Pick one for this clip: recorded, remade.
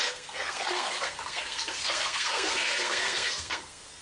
remade